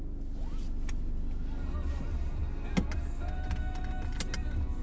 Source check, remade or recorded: recorded